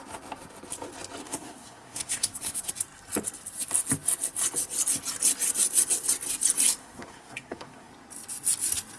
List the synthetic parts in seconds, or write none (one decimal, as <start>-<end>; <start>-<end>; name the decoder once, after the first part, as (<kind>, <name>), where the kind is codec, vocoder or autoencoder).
1.2-2.7 (codec, SNAC); 6.8-7.9